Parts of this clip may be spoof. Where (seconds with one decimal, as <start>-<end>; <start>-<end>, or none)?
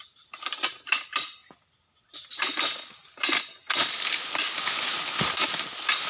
none